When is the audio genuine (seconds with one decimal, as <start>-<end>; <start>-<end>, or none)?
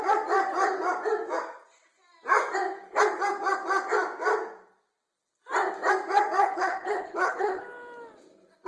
0.0-6.4; 7.6-8.7